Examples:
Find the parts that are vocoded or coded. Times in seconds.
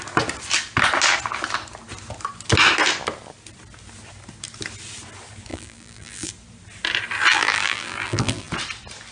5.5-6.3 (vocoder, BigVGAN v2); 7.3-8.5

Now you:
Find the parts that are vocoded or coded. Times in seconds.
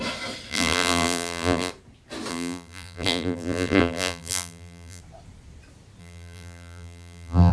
0.5-1.7 (vocoder, BigVGAN v2); 2.3-5.0; 6.0-7.5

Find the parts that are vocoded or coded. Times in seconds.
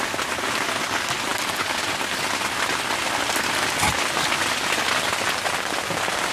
none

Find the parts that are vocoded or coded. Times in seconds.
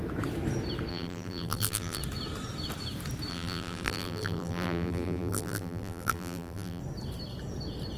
0.9-2.0 (vocoder, BigVGAN v2); 3.3-6.8